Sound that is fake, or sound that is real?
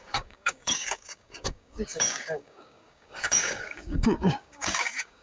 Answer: fake